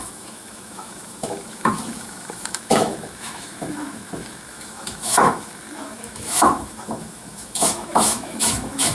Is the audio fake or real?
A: fake